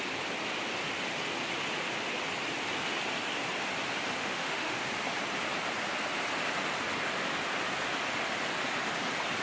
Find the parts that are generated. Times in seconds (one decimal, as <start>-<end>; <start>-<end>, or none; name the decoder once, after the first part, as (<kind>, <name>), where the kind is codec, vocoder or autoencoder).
4.2-4.9 (autoencoder, DAC-VAE)